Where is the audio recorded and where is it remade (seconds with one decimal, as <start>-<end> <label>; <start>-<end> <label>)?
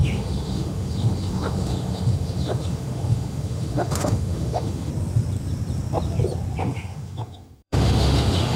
0.0-4.9 remade; 4.9-6.6 recorded; 6.6-8.6 remade